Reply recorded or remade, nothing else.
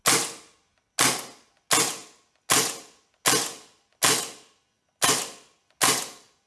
recorded